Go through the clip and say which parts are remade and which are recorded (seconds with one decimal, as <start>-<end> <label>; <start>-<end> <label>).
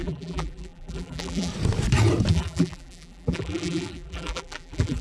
0.0-1.5 remade; 1.5-2.3 recorded; 2.3-5.0 remade